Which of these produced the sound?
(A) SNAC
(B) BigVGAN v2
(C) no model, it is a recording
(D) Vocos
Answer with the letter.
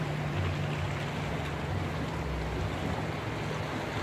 C